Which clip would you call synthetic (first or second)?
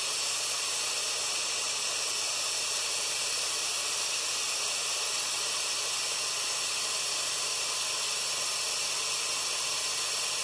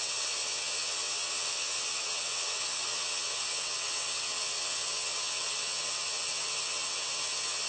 second